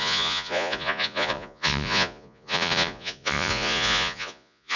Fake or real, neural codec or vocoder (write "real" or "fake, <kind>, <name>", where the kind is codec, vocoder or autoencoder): fake, vocoder, Vocos